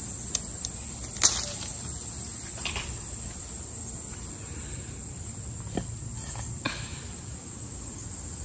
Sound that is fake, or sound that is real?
real